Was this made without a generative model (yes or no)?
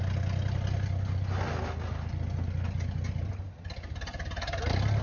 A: yes